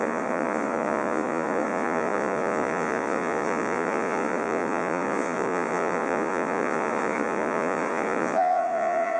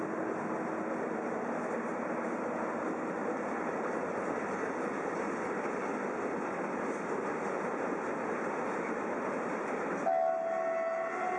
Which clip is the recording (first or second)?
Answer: second